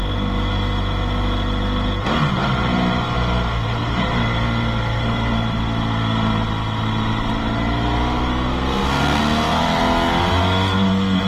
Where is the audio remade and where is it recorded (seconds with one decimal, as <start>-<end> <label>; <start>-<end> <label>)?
0.0-8.3 recorded; 8.3-9.2 remade; 9.2-11.3 recorded